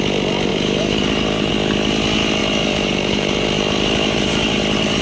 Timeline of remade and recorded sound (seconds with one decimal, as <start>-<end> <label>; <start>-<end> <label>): 0.0-0.5 recorded; 0.5-1.5 remade; 1.5-2.4 recorded; 2.4-5.0 remade